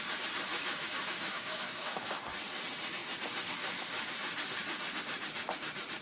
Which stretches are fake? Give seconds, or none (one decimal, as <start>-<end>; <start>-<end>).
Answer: 0.5-2.2